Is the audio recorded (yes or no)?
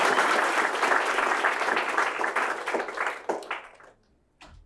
yes